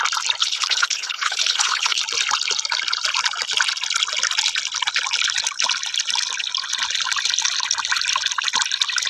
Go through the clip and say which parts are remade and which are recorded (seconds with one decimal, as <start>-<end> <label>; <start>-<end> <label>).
0.0-0.4 recorded; 0.4-2.0 remade; 2.0-9.1 recorded